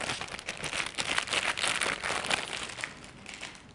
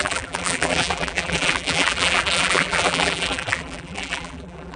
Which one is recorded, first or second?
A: first